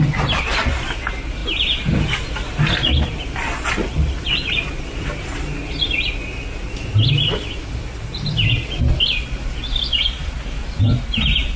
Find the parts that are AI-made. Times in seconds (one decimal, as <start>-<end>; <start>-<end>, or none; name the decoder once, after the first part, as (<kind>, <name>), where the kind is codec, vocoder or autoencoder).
none